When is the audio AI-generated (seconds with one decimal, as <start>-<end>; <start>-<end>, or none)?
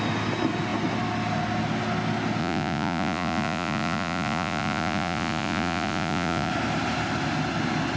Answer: 2.4-6.5